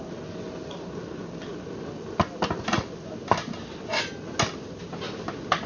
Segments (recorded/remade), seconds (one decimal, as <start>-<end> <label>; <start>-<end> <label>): 0.0-5.7 recorded